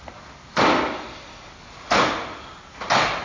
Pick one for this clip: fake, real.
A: real